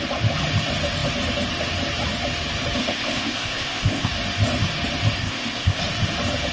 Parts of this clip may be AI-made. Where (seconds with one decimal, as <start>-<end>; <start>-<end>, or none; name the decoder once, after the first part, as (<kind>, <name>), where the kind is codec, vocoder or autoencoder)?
2.8-4.1 (codec, ZipCodec); 5.2-5.8